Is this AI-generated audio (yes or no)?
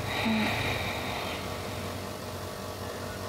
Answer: no